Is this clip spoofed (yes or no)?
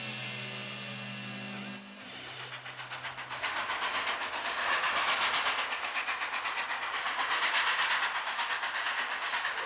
no